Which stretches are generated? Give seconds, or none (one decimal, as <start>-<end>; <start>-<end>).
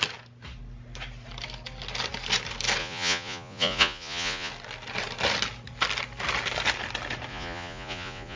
2.8-4.5; 7.3-8.4